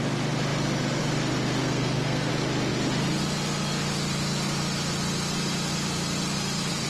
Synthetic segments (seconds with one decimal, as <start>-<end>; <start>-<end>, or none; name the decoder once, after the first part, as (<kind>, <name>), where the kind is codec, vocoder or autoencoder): 1.6-2.3 (codec, SNAC)